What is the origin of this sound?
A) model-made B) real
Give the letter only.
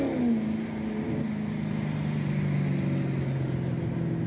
B